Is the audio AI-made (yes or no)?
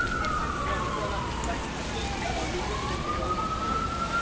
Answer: no